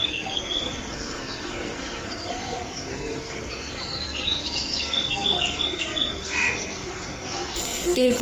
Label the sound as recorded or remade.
remade